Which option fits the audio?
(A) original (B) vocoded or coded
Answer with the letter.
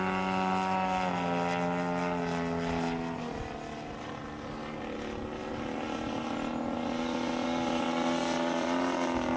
A